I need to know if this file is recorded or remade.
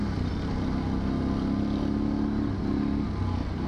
recorded